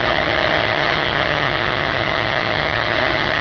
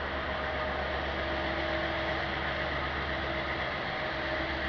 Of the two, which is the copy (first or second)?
first